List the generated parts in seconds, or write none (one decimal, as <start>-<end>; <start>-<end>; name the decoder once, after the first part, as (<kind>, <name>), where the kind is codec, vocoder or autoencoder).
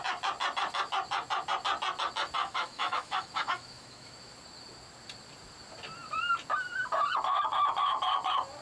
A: 2.4-4.3 (autoencoder, DAC-VAE)